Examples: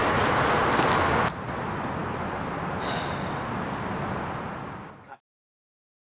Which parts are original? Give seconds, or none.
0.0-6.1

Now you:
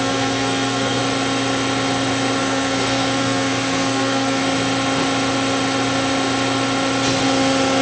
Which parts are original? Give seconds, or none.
1.0-2.4; 4.4-7.8

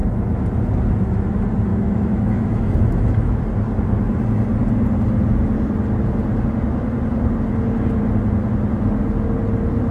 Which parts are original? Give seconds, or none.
0.0-1.7; 3.4-9.9